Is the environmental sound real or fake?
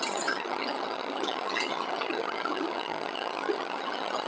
fake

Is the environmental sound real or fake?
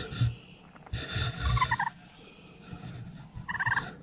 real